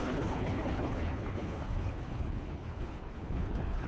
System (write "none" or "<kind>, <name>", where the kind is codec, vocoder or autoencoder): codec, HILCodec